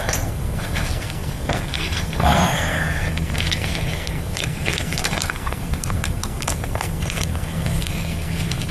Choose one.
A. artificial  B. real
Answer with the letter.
A